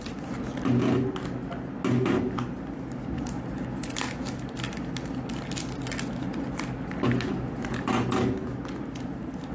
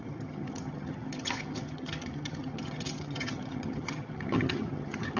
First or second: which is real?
first